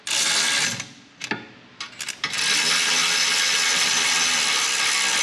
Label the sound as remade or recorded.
recorded